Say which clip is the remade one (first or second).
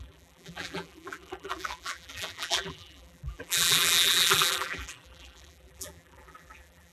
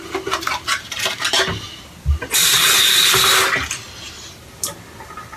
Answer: first